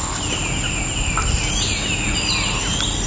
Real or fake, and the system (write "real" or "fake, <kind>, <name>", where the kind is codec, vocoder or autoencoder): real